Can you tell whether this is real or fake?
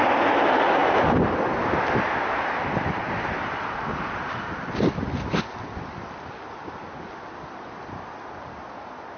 real